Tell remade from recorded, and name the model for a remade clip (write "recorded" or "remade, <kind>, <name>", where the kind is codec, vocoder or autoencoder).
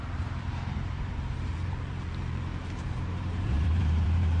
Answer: remade, vocoder, BigVGAN v2